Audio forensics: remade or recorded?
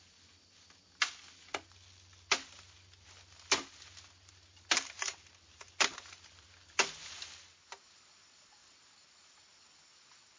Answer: recorded